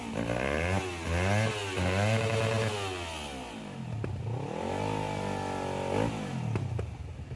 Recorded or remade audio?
recorded